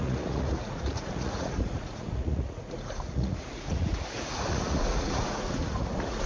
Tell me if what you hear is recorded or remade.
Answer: remade